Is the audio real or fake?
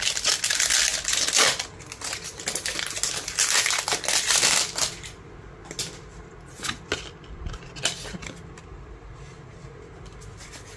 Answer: real